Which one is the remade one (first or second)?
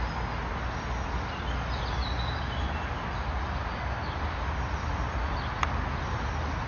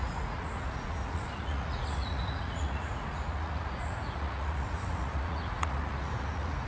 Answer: second